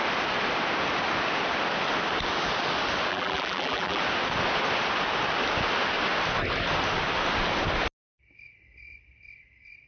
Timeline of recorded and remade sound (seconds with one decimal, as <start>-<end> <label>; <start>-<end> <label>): 0.0-3.1 recorded; 3.1-4.0 remade; 4.0-9.9 recorded